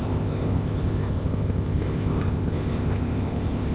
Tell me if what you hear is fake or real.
fake